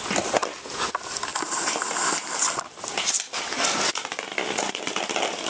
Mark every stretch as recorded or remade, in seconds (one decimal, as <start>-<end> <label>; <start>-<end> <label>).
0.0-5.5 recorded